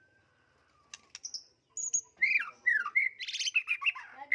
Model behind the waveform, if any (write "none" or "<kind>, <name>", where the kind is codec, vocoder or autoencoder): none